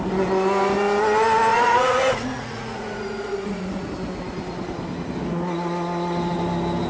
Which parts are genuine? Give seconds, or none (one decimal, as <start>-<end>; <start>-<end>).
0.0-1.5; 3.9-6.9